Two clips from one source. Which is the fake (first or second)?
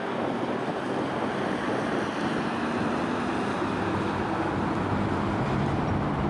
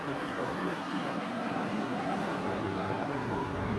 second